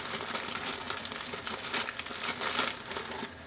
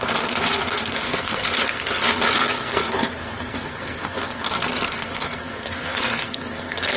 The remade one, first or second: second